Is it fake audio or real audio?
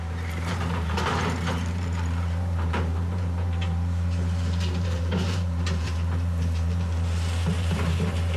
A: fake